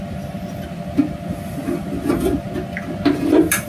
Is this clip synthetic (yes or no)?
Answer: no